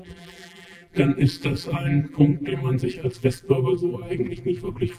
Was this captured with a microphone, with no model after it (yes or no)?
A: no